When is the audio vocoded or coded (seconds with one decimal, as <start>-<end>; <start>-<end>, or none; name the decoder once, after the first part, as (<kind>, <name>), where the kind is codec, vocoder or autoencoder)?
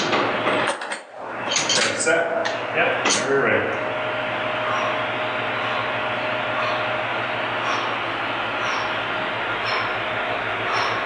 none